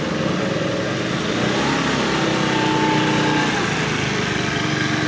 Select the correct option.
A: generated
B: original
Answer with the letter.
B